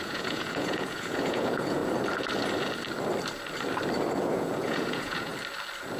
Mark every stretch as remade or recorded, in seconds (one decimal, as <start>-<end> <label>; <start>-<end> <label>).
0.0-1.8 remade; 1.8-4.3 recorded; 4.3-5.3 remade; 5.3-6.0 recorded